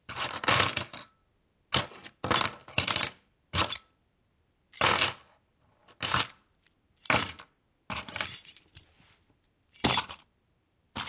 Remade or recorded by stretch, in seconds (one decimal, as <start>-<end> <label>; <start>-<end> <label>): 0.0-1.2 remade; 1.2-1.9 recorded; 1.9-5.8 remade; 5.8-8.0 recorded; 8.0-11.1 remade